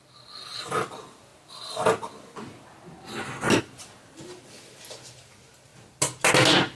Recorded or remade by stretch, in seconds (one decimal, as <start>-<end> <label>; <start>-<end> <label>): 0.0-6.7 recorded